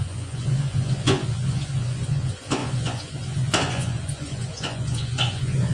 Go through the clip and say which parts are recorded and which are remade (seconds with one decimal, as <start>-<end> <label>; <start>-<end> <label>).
0.0-5.7 remade